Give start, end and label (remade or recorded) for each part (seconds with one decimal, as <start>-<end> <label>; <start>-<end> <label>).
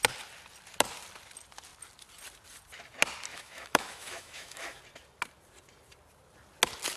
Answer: 0.0-3.3 recorded; 3.3-4.8 remade; 4.8-7.0 recorded